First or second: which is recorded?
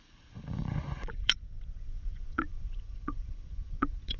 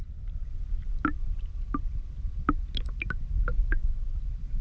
second